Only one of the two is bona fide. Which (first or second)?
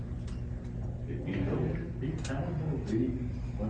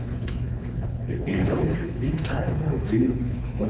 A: first